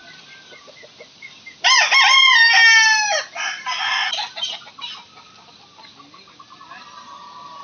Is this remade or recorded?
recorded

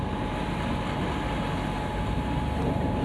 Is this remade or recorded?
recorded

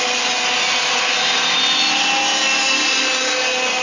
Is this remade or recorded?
recorded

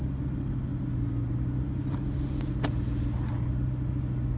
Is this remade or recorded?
recorded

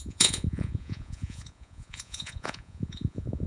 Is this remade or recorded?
remade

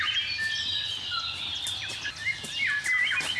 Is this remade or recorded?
recorded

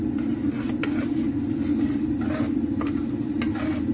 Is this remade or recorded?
recorded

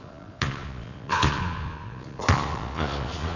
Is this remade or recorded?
remade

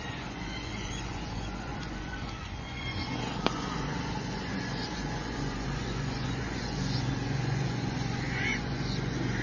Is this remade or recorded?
remade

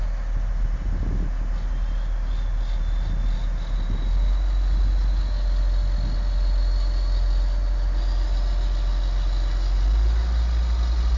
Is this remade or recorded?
recorded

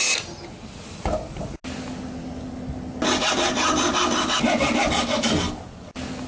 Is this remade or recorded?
recorded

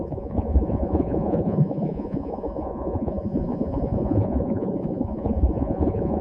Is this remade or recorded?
remade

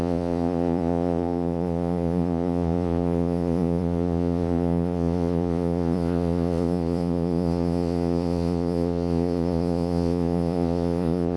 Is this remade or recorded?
remade